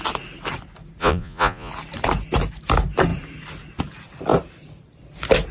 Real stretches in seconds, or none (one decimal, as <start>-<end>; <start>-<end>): 0.0-1.0; 1.7-5.5